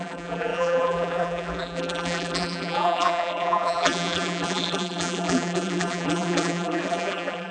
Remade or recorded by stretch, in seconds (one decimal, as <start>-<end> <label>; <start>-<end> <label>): 0.0-7.5 remade